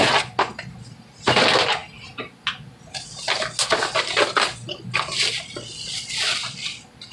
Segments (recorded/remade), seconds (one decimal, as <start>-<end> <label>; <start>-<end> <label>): 0.0-7.1 recorded